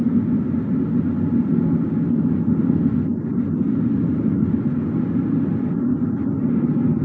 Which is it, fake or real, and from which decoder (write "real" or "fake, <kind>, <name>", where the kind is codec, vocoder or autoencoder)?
real